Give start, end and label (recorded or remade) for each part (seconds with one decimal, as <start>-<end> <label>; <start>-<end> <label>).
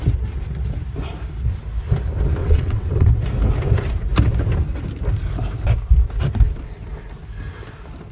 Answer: 0.0-2.4 recorded; 2.4-3.1 remade; 3.1-8.1 recorded